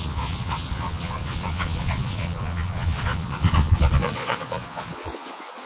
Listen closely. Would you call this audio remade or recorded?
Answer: remade